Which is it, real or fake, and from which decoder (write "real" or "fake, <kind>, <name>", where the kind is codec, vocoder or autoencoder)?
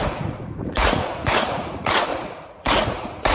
fake, vocoder, Vocos